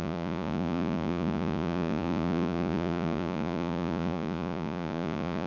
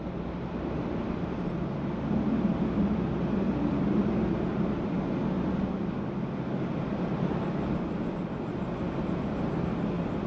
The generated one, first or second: first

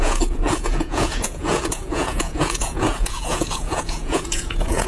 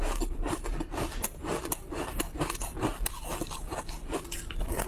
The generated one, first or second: first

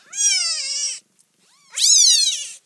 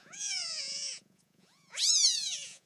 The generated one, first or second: second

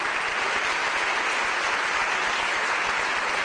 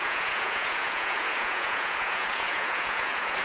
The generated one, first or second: second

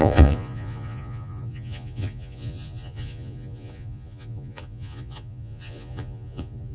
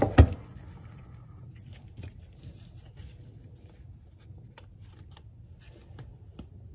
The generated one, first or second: first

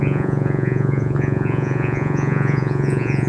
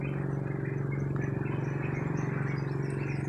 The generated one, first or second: first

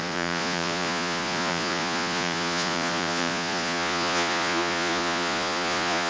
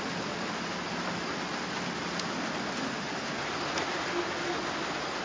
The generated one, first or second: first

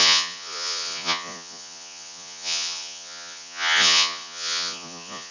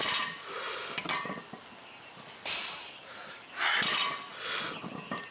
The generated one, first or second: first